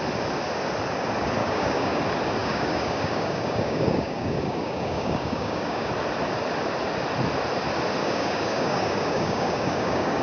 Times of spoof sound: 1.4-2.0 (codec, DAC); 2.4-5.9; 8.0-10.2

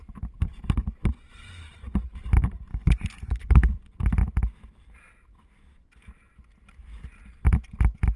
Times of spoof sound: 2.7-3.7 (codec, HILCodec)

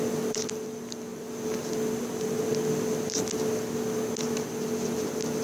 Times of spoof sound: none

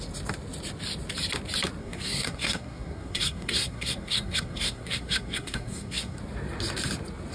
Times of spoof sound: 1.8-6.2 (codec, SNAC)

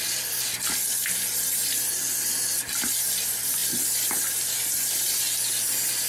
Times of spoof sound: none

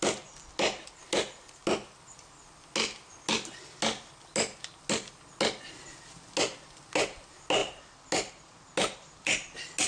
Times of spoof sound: none

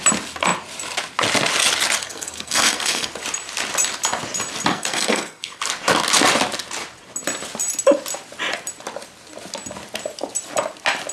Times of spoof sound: 2.0-3.1 (codec, SNAC); 4.7-5.6